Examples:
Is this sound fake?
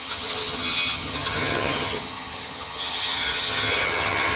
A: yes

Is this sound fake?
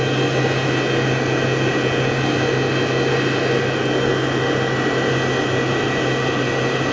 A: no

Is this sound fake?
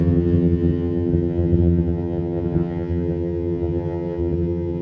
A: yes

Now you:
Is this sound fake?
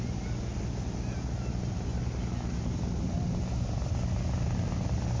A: no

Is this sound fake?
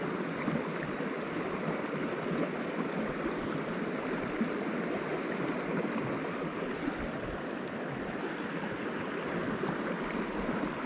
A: no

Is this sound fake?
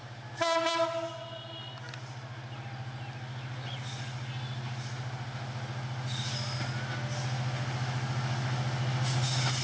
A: no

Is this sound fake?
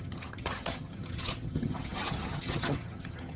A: yes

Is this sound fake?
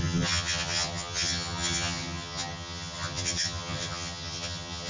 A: yes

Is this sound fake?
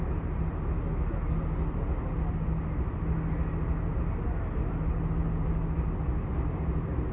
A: no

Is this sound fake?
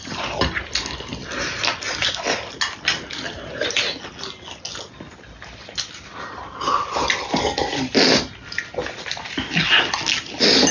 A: no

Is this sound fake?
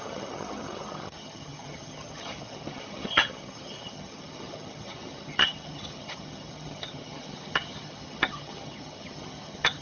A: yes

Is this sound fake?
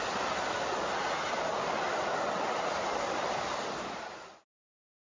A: no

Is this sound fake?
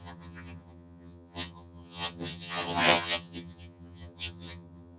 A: yes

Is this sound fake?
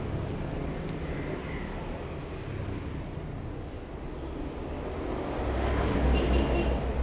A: no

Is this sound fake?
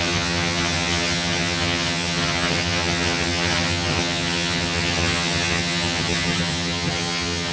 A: yes